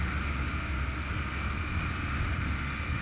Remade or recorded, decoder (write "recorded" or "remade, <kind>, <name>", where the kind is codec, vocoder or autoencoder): recorded